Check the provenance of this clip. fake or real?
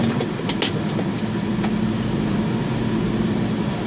real